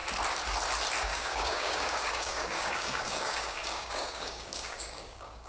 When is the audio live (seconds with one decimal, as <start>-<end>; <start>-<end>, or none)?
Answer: 0.0-1.0